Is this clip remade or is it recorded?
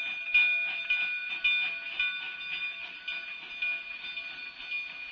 recorded